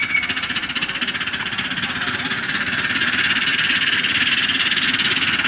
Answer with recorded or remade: recorded